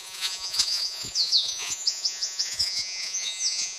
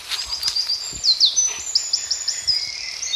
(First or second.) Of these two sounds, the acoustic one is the second